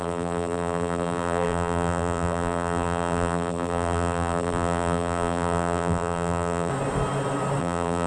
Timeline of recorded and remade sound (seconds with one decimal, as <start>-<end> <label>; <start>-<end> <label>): 0.0-6.7 remade; 6.7-7.6 recorded; 7.6-8.1 remade